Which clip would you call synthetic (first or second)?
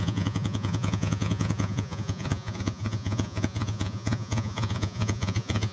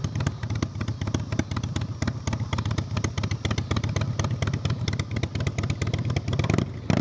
first